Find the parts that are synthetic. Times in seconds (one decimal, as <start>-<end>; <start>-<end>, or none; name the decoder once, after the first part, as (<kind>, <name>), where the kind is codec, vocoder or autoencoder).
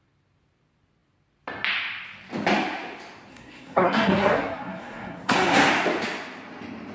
3.3-5.7 (codec, SNAC)